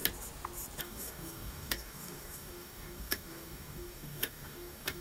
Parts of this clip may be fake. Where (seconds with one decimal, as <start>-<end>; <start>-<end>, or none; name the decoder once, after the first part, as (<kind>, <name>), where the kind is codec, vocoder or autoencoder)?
0.8-5.0 (codec, DAC)